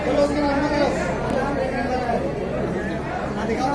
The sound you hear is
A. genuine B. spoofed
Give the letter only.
A